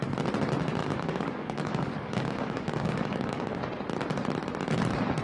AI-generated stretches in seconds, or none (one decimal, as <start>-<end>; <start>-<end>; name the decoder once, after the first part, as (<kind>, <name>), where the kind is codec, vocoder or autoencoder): 0.8-3.6 (codec, DAC)